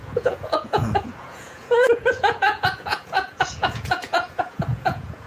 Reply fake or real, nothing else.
fake